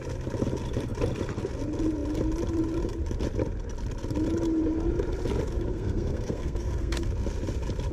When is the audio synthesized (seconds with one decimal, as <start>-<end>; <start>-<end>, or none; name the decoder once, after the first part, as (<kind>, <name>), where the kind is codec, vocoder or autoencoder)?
5.7-7.1 (codec, SNAC)